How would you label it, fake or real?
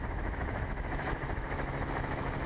fake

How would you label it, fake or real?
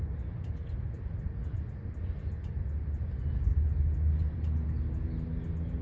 real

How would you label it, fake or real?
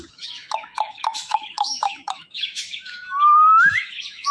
fake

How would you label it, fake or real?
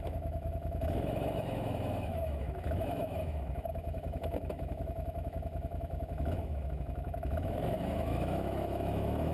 fake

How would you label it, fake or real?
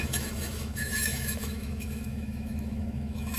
fake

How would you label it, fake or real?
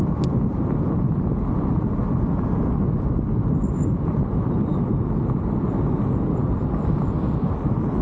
real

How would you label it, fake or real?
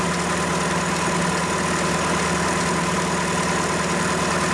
real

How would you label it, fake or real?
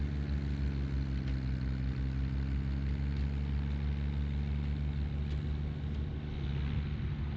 real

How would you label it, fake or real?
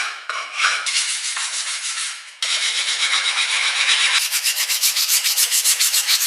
fake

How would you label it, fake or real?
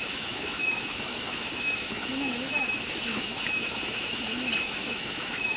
fake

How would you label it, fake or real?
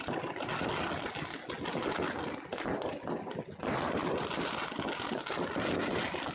real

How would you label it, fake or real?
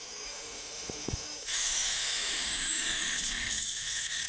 fake